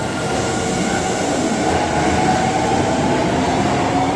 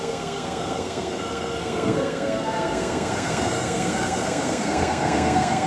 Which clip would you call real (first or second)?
first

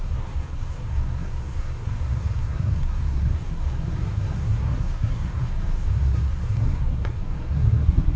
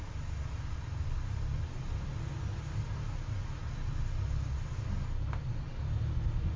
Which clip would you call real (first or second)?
second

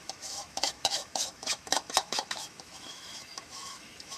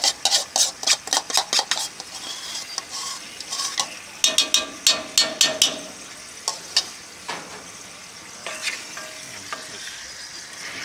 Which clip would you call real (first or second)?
second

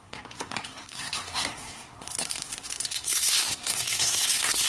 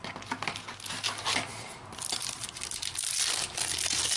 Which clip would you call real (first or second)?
second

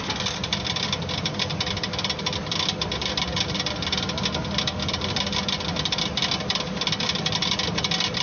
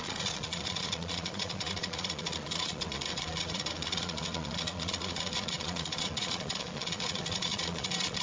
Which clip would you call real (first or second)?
first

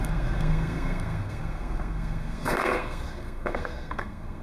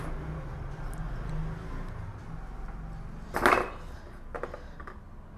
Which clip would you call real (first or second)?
second